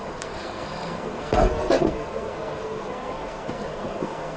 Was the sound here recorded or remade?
remade